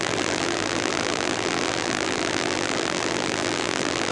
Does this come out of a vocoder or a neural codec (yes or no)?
yes